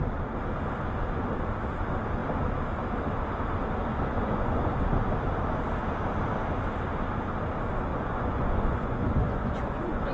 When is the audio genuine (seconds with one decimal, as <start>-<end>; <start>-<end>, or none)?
0.0-3.9; 4.8-7.9